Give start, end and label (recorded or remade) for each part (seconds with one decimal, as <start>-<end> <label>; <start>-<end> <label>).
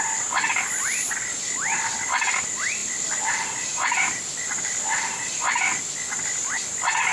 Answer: 0.0-2.8 recorded; 2.8-5.8 remade; 5.8-7.1 recorded